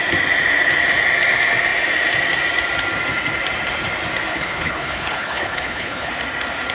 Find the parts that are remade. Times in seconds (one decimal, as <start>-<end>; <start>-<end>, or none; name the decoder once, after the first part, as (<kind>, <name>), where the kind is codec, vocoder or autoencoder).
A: 4.3-6.1 (codec, HILCodec)